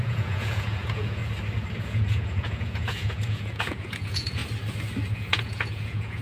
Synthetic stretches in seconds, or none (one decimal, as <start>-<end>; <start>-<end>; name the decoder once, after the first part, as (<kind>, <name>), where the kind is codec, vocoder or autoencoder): 0.0-1.2 (vocoder, Vocos); 1.8-4.4; 5.1-6.2